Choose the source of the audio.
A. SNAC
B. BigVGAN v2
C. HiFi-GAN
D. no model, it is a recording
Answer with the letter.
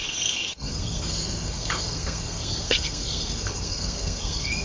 A